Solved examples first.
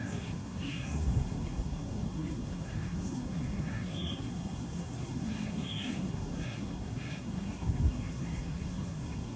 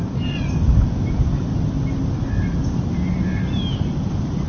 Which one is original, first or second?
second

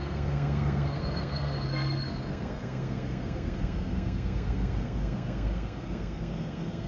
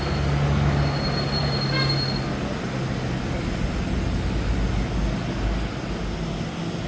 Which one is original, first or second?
second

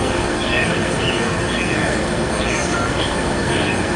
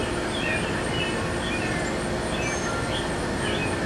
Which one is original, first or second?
second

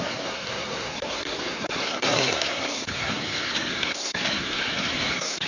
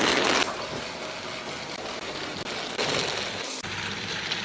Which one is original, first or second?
second